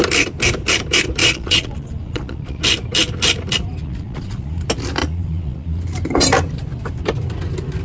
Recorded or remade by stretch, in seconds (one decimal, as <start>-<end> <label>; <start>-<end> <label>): 0.0-1.2 recorded; 1.2-2.6 remade; 2.6-3.8 recorded; 3.8-4.6 remade; 4.6-5.0 recorded; 5.0-5.8 remade; 5.8-7.8 recorded